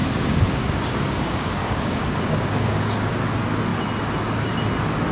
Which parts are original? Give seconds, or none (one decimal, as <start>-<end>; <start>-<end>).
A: 3.1-5.1